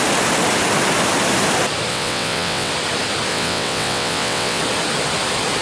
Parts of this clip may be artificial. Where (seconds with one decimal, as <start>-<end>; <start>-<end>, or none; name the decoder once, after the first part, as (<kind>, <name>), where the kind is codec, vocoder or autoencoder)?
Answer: 1.9-2.7 (vocoder, WaveNeXt); 3.3-4.6